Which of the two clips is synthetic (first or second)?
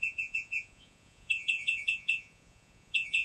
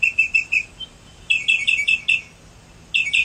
first